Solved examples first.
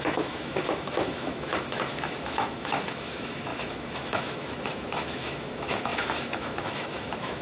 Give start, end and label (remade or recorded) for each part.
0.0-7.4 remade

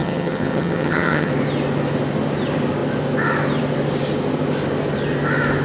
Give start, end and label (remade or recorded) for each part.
0.0-1.3 remade; 1.3-5.6 recorded

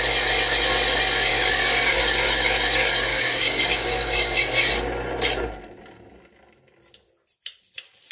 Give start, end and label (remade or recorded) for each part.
0.0-1.3 recorded; 1.3-1.8 remade; 1.8-3.1 recorded; 3.1-4.4 remade; 4.4-8.1 recorded

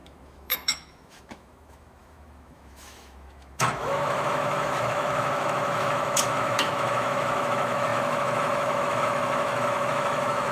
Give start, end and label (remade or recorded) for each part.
0.0-10.5 remade

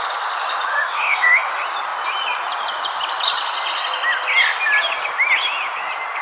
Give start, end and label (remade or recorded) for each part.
0.0-0.7 recorded; 0.7-1.5 remade; 1.5-6.2 recorded

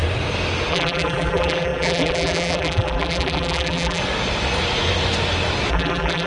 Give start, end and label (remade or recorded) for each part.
0.0-0.7 recorded; 0.7-4.0 remade; 4.0-5.7 recorded; 5.7-6.3 remade